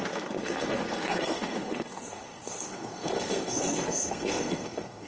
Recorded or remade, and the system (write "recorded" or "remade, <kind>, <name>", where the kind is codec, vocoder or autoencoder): remade, codec, SNAC